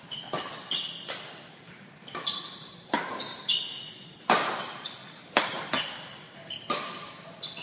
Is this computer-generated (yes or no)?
no